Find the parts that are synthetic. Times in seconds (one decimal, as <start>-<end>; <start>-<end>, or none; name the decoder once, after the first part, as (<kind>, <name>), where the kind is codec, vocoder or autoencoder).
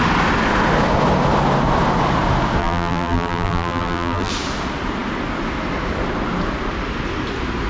2.6-4.3 (vocoder, BigVGAN v2)